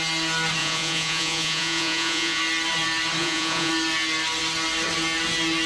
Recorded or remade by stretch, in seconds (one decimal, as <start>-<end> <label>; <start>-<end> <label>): 0.0-0.6 recorded; 0.6-2.4 remade; 2.4-3.2 recorded; 3.2-3.7 remade; 3.7-5.7 recorded